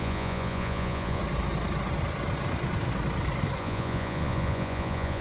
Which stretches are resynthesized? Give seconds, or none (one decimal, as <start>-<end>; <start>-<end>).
0.0-1.2; 3.6-5.2